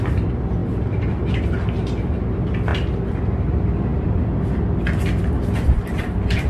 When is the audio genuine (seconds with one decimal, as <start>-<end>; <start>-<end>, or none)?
0.0-0.6; 1.3-3.9; 5.2-6.5

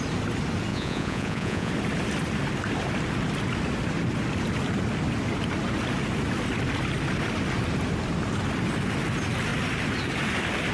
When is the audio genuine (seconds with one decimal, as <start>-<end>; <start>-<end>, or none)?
0.0-0.7; 1.7-10.7

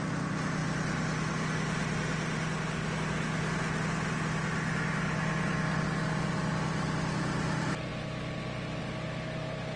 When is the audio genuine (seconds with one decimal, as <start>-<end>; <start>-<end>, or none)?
0.0-9.8

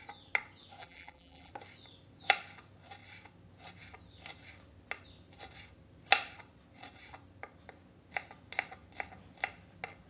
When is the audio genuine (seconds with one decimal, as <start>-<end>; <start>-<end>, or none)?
0.0-0.8; 1.5-10.1

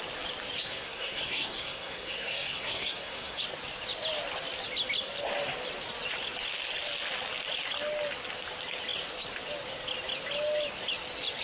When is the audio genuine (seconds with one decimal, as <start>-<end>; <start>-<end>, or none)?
0.0-0.6; 3.4-11.4

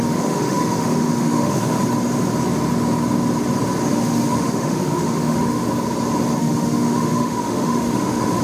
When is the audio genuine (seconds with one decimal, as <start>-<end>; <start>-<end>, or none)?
1.8-3.9; 5.6-6.4

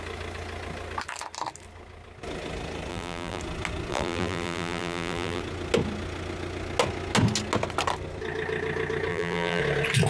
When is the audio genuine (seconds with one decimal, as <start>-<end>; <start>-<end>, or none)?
0.0-2.9; 3.4-3.9; 5.4-9.1; 9.6-10.1